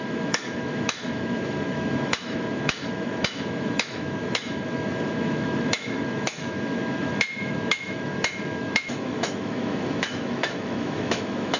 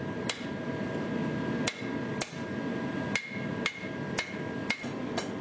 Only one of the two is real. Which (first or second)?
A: second